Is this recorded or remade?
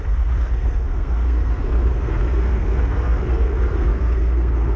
remade